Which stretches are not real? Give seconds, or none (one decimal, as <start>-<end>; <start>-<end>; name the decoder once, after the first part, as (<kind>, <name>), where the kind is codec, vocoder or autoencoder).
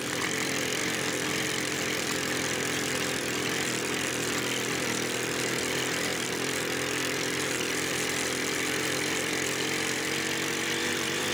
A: 0.0-0.8 (vocoder, BigVGAN v2); 2.0-11.3